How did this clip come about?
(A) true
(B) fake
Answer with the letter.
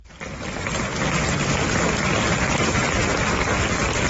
A